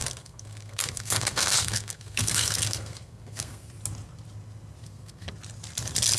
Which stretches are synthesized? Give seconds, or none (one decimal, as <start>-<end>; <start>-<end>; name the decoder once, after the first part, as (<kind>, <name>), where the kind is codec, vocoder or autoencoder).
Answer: 0.0-3.7 (codec, SNAC); 4.8-5.3